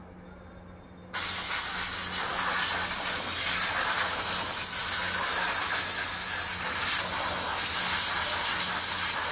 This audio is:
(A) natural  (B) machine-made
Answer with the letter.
A